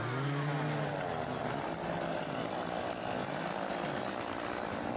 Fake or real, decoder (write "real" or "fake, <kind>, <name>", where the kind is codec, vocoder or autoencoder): real